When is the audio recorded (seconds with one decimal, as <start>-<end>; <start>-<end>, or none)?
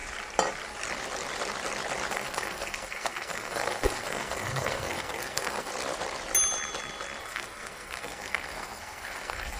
0.0-2.1; 5.7-7.2